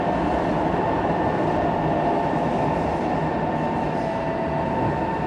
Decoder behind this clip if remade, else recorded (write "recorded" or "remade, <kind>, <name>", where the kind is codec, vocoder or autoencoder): recorded